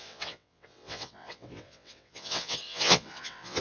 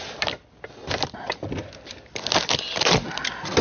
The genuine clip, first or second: second